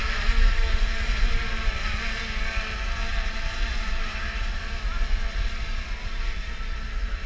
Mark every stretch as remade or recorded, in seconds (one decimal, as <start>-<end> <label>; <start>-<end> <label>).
0.0-3.0 recorded; 3.0-4.7 remade; 4.7-7.3 recorded